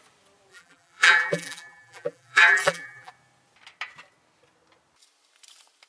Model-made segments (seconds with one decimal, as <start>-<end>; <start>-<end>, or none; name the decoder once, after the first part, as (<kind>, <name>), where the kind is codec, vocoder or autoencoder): 0.5-3.1 (vocoder, BigVGAN v2)